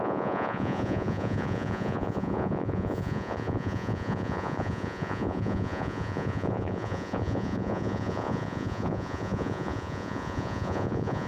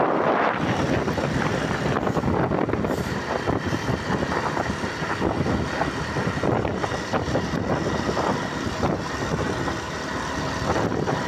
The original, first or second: second